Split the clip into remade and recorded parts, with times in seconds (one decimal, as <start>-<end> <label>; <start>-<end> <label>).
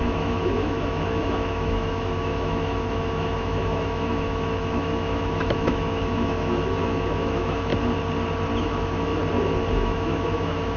0.0-7.7 remade; 7.7-8.6 recorded; 8.6-9.1 remade; 9.1-9.7 recorded; 9.7-10.8 remade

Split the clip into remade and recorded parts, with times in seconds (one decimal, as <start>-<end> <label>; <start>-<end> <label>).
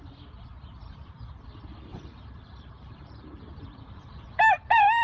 0.0-1.9 recorded; 1.9-4.6 remade; 4.6-5.0 recorded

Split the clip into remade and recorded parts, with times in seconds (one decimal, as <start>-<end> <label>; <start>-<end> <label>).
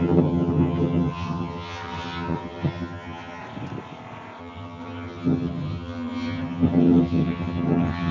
0.0-3.4 remade; 3.4-4.4 recorded; 4.4-8.1 remade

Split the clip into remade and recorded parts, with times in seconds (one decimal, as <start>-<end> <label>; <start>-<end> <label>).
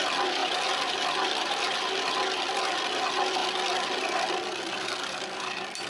0.0-3.4 remade; 3.4-4.3 recorded; 4.3-5.9 remade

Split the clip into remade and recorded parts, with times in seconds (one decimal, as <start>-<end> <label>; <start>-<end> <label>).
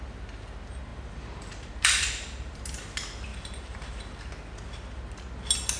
0.0-0.9 recorded; 0.9-2.6 remade; 2.6-3.3 recorded; 3.3-4.0 remade; 4.0-5.8 recorded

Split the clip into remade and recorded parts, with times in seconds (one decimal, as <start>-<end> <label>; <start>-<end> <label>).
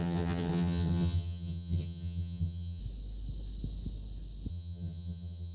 0.0-2.8 remade; 2.8-4.5 recorded; 4.5-5.5 remade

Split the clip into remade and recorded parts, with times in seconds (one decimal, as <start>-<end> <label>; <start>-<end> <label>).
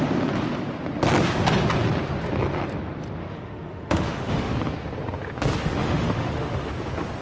0.0-3.2 recorded; 3.2-4.5 remade; 4.5-5.8 recorded; 5.8-6.7 remade; 6.7-7.2 recorded